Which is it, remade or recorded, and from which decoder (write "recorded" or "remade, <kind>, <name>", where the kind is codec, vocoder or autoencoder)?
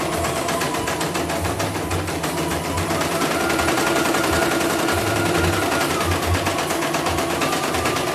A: remade, vocoder, BigVGAN v2